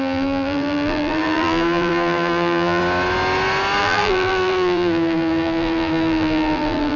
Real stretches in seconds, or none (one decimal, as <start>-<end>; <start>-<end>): 2.8-3.8

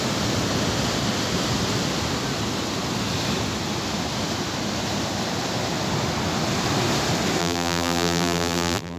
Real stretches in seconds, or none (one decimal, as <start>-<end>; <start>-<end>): 0.0-7.4

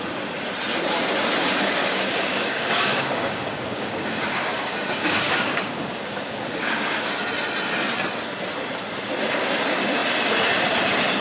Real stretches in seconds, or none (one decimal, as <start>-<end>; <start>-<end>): 0.0-1.8; 7.1-11.2

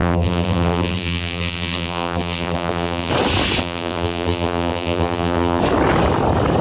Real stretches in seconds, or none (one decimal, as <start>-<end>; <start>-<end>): 3.1-3.6; 5.6-6.6